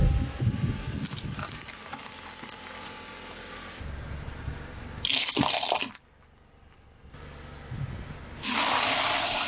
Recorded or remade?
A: recorded